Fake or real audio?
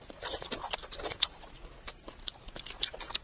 real